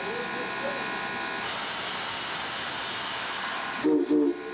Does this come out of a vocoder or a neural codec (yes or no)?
no